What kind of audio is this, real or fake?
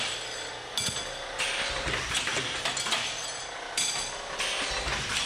real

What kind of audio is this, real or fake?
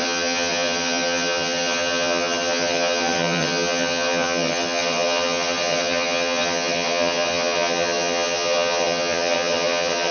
fake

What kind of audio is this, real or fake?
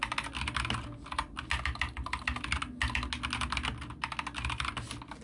real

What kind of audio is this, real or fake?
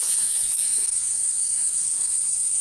fake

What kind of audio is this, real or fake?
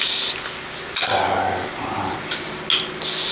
real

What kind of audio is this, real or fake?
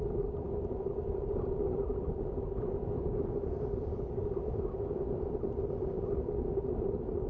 fake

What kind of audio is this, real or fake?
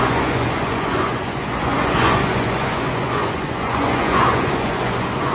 fake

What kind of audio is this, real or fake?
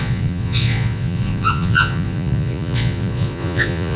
fake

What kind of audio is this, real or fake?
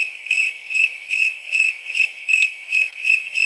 fake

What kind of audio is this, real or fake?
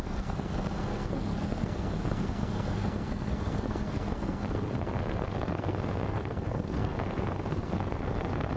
fake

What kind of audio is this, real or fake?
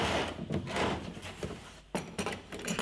real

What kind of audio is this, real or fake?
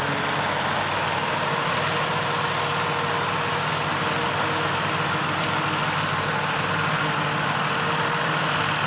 real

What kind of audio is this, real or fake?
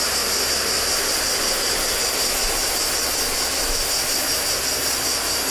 real